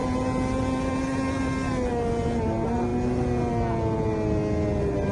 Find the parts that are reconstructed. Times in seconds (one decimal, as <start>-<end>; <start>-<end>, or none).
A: none